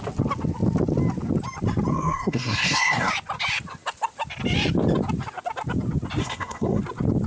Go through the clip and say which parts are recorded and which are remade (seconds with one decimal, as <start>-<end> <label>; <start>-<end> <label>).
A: 0.0-1.9 recorded; 1.9-3.1 remade; 3.1-6.2 recorded; 6.2-6.8 remade; 6.8-7.3 recorded